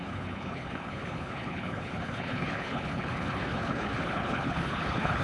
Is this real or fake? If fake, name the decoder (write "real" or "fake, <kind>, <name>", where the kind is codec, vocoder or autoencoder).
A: fake, codec, HILCodec